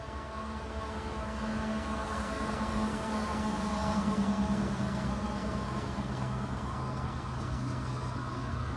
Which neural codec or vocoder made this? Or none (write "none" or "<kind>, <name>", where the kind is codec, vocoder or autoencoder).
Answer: codec, SNAC